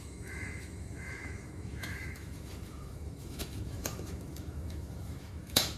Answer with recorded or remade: remade